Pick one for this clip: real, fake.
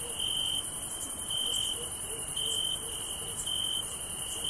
real